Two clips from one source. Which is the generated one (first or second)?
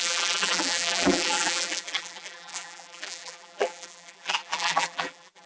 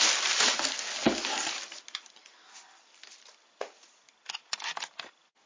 first